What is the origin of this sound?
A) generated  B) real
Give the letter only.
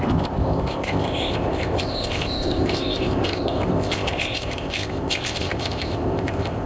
A